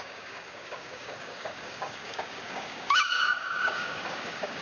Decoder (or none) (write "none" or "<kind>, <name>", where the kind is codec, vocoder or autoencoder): codec, DAC